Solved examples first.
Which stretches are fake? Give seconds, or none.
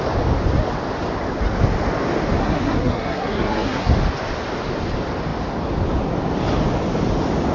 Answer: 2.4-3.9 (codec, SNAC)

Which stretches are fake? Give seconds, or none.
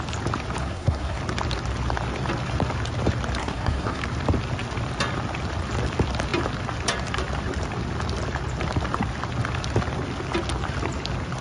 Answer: 0.6-1.2 (codec, SNAC); 3.4-4.0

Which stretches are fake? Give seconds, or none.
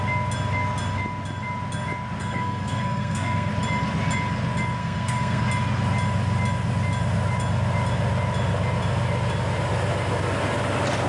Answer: 2.2-3.5 (codec, SNAC); 4.8-5.4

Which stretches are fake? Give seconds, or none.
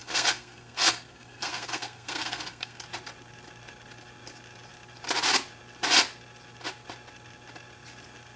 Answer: 0.0-2.8 (codec, SNAC)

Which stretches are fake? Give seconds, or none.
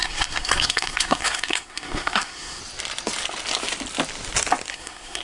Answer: 0.0-2.6 (codec, SNAC); 4.7-5.2